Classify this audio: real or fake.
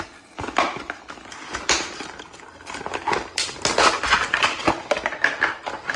real